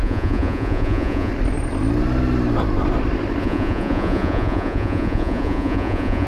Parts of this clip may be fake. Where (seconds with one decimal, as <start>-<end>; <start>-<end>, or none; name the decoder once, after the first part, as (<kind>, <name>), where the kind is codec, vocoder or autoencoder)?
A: 0.0-1.3 (vocoder, Vocos); 3.4-6.3